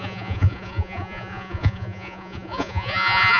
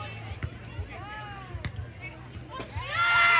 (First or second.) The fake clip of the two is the first